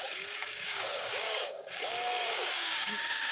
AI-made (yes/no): yes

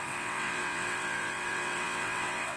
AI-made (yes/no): yes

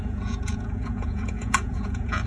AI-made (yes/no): yes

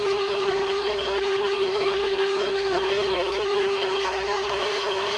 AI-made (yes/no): yes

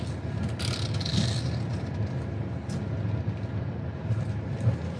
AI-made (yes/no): no